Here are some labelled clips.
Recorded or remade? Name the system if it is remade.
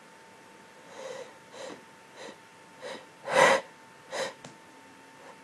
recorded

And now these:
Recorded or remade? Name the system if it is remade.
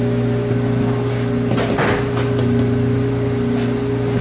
recorded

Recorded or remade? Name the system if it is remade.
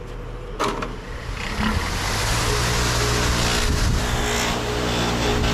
recorded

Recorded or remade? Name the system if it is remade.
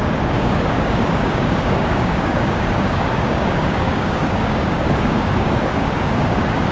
remade, codec, DAC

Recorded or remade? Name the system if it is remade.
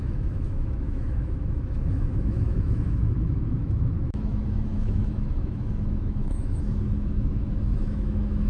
remade, autoencoder, DAC-VAE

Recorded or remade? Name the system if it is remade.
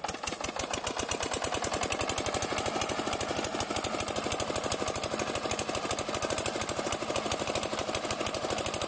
recorded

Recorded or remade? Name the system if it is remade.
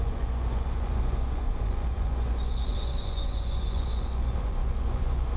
remade, vocoder, Vocos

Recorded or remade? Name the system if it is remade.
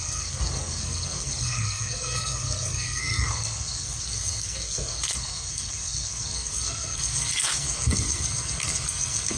remade, codec, SNAC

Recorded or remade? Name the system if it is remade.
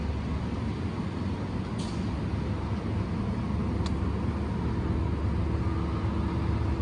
recorded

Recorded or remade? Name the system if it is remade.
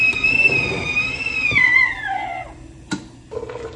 recorded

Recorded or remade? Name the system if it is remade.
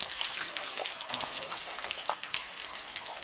remade, codec, SNAC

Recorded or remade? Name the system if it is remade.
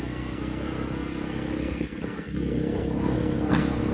remade, codec, SNAC